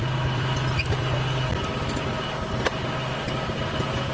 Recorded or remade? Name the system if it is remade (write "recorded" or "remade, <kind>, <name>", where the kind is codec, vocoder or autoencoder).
recorded